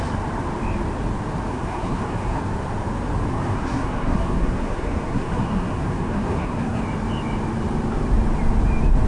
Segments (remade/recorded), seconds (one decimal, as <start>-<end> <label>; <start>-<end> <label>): 0.0-1.5 recorded; 1.5-2.4 remade; 2.4-3.3 recorded; 3.3-6.8 remade; 6.8-9.1 recorded